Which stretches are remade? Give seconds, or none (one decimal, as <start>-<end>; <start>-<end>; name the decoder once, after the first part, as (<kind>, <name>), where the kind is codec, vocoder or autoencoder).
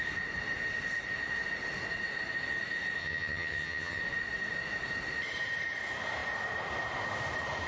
3.0-4.0 (vocoder, HiFi-GAN)